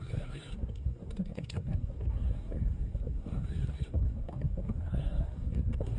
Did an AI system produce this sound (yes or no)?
yes